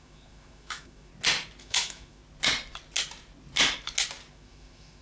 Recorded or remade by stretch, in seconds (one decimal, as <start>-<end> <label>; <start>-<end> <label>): 0.0-1.1 remade; 1.1-1.6 recorded; 1.6-2.2 remade; 2.2-4.3 recorded; 4.3-5.0 remade